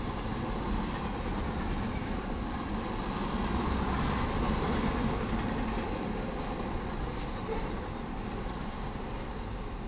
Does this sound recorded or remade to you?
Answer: recorded